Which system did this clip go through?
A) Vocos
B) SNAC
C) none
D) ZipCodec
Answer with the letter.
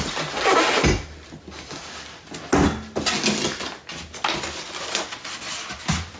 C